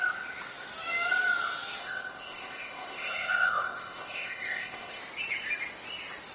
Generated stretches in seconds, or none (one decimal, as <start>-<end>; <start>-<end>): 1.8-5.0